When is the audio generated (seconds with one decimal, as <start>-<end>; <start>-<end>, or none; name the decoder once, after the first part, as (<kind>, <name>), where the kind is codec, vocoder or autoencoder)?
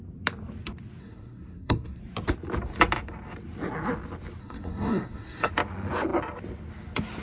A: 1.0-2.0 (codec, SNAC); 4.4-5.5